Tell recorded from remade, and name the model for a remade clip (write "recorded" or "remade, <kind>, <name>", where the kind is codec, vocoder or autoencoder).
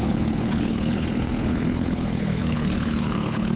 remade, codec, HILCodec